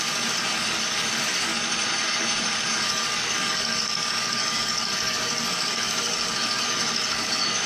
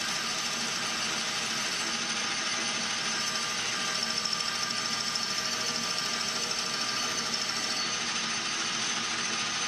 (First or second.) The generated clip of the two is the first